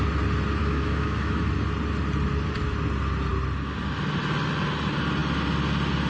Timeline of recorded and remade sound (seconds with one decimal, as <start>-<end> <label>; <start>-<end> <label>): 0.0-0.6 recorded; 0.6-1.5 remade; 1.5-6.1 recorded